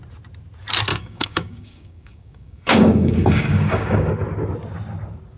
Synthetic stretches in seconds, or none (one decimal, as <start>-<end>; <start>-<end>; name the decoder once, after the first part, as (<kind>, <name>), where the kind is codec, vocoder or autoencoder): 0.9-4.1 (codec, DAC)